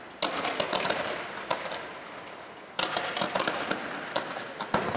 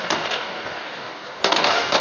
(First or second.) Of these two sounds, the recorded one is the first